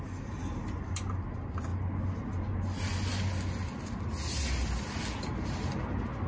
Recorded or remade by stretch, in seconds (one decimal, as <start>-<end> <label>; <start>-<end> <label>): 0.0-6.3 recorded